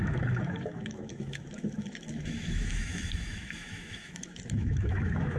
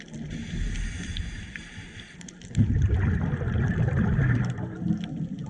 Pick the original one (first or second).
second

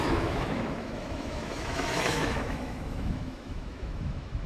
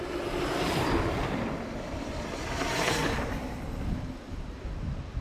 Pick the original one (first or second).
second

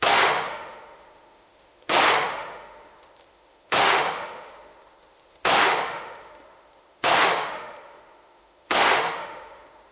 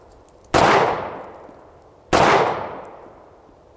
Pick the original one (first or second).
second